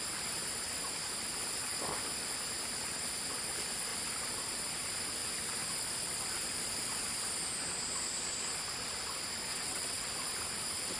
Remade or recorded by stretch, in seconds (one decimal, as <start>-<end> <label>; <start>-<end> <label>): 0.0-9.5 recorded; 9.5-10.1 remade; 10.1-11.0 recorded